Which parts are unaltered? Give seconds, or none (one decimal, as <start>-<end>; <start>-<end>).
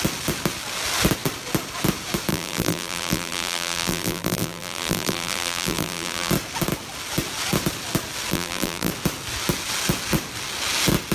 0.0-2.3; 6.3-8.3; 8.9-11.1